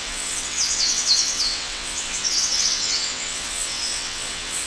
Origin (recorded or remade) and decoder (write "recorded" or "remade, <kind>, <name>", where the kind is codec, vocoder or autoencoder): remade, vocoder, WaveNeXt